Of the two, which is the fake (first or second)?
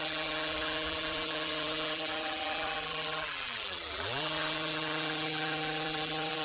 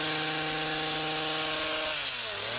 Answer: first